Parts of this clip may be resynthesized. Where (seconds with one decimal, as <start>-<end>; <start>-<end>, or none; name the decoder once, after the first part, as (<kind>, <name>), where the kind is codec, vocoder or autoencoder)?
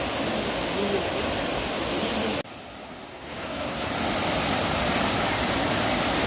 3.1-3.9 (codec, SNAC)